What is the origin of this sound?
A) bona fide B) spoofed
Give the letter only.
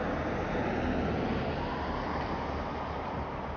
A